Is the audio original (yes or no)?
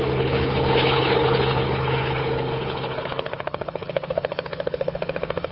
no